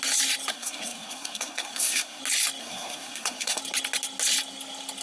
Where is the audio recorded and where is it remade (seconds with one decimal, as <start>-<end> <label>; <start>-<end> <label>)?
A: 0.0-0.5 recorded; 0.5-2.2 remade; 2.2-2.6 recorded; 2.6-3.6 remade; 3.6-5.0 recorded